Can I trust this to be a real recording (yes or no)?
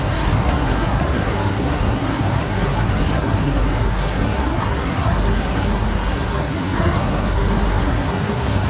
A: no